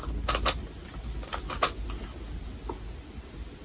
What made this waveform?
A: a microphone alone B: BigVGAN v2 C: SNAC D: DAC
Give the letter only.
A